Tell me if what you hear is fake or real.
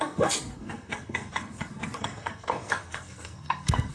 fake